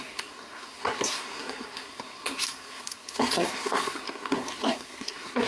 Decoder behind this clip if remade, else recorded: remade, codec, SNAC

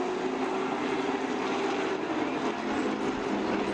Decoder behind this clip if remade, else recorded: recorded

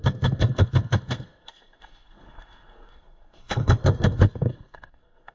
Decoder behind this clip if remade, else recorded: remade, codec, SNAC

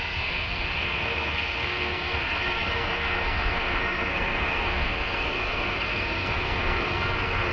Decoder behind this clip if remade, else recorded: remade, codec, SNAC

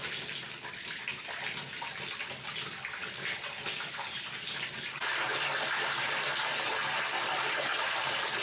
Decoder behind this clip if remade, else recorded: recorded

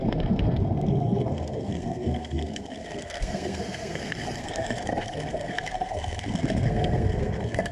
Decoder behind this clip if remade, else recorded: remade, codec, SNAC